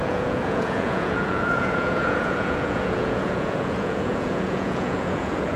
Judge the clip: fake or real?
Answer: fake